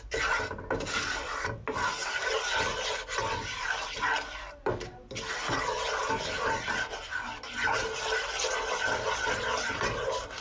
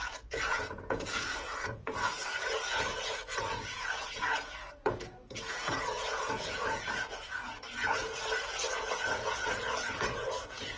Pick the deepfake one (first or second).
second